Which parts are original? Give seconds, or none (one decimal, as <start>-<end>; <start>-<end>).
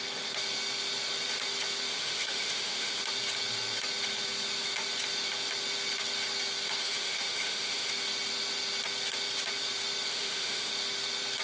0.0-1.9; 3.0-6.8; 7.9-10.1; 10.7-11.4